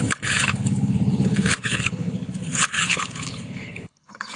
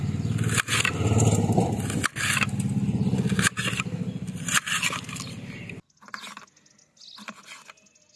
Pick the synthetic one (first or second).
first